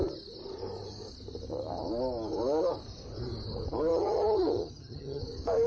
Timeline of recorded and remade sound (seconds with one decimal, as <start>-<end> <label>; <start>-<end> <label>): 0.0-3.9 recorded; 3.9-5.2 remade; 5.2-5.7 recorded